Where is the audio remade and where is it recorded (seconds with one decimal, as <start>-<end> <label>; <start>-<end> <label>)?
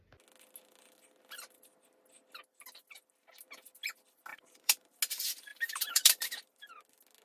0.0-4.3 recorded; 4.3-5.0 remade; 5.0-5.5 recorded; 5.5-6.7 remade; 6.7-7.2 recorded